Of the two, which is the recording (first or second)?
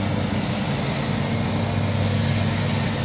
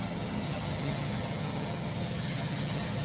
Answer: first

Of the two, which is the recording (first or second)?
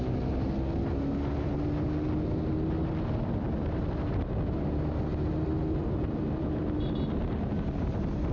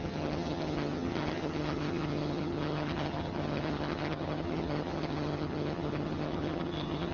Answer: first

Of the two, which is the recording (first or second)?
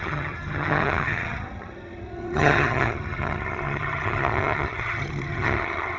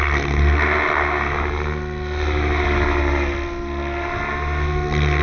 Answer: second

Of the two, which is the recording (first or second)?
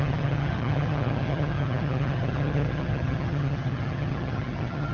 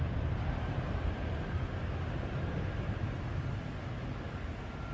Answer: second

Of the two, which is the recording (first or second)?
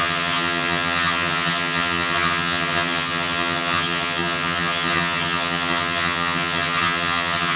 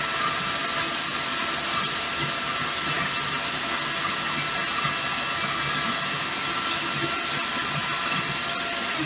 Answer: second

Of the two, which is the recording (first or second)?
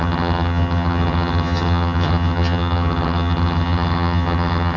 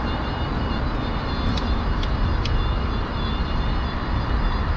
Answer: second